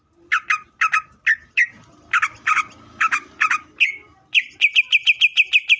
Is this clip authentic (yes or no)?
yes